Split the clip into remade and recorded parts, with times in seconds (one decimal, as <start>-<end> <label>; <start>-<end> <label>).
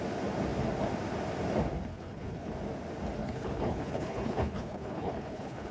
0.0-1.9 recorded; 1.9-2.5 remade; 2.5-3.2 recorded; 3.2-5.7 remade